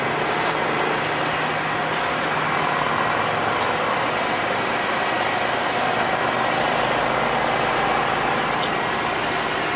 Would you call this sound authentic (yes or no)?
yes